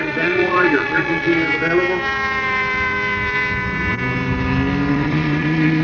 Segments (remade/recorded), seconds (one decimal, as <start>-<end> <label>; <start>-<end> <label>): 0.0-1.4 remade; 1.4-4.9 recorded; 4.9-5.8 remade